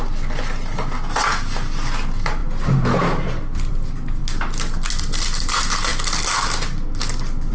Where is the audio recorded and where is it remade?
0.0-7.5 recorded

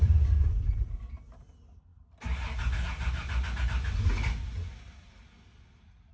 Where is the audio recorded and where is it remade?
0.0-1.0 remade; 1.0-6.1 recorded

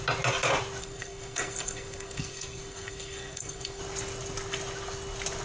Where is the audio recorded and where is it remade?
0.0-0.8 recorded; 0.8-3.8 remade; 3.8-5.4 recorded

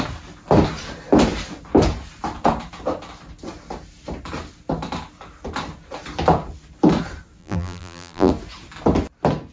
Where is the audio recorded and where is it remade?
0.0-7.4 recorded; 7.4-8.3 remade; 8.3-9.5 recorded

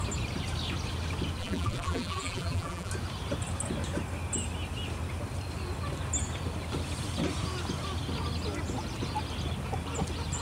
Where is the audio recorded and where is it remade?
0.0-1.4 recorded; 1.4-2.9 remade; 2.9-10.4 recorded

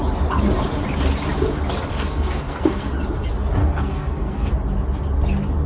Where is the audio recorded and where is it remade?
0.0-1.9 recorded; 1.9-2.9 remade; 2.9-3.6 recorded; 3.6-4.5 remade; 4.5-5.7 recorded